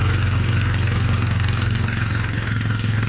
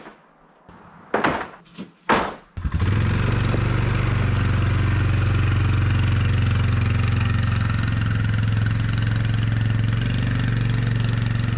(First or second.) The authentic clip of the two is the second